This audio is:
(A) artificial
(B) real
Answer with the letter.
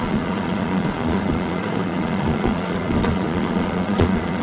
A